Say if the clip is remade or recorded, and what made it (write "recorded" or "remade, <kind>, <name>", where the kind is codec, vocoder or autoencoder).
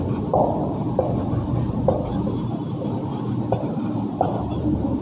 remade, vocoder, BigVGAN v2